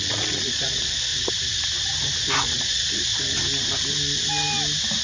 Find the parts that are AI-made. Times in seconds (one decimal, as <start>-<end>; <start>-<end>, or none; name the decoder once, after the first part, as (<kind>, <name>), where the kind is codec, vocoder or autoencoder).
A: 0.0-1.1 (vocoder, Vocos); 2.4-3.1